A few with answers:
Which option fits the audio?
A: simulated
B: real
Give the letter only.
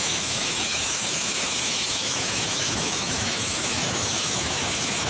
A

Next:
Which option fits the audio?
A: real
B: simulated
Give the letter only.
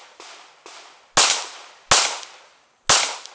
A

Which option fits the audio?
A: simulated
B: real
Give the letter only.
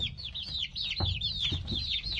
B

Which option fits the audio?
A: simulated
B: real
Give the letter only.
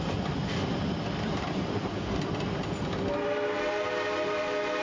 B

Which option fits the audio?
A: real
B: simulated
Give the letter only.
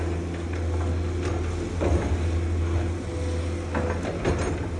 A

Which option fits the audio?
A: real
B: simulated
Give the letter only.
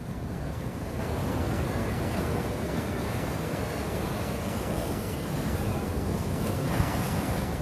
B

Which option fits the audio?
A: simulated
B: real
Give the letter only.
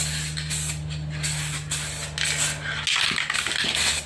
B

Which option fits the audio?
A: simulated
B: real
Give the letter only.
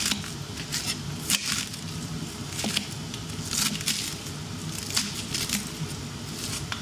B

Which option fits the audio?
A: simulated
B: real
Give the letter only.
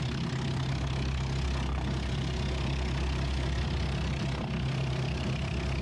B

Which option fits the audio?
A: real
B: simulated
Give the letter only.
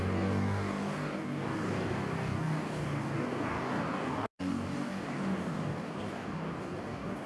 B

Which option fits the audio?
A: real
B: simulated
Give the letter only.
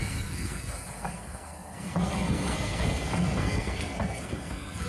B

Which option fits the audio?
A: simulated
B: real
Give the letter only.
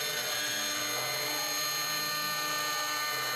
B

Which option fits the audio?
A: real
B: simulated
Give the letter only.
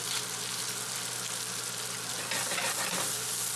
A